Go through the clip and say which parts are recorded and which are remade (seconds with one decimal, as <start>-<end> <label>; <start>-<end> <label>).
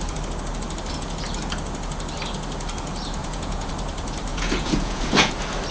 0.0-3.2 recorded; 3.2-3.7 remade; 3.7-4.3 recorded; 4.3-5.3 remade; 5.3-5.7 recorded